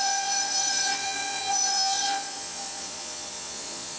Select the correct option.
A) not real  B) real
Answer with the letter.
A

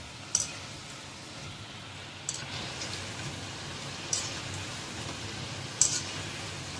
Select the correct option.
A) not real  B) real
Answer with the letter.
B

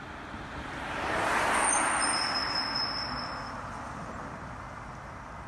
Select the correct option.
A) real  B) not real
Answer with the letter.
A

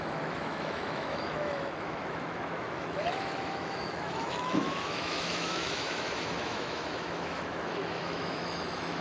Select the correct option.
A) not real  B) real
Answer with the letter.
A